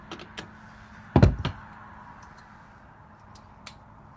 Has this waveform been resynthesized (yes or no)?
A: no